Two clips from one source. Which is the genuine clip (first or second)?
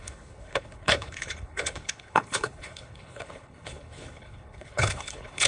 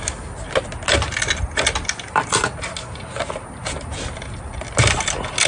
second